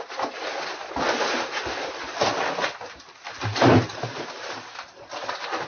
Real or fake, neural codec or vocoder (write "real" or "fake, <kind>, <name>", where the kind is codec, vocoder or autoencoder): real